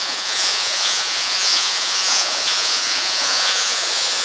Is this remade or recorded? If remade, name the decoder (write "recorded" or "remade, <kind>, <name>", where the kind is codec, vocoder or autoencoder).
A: remade, vocoder, Vocos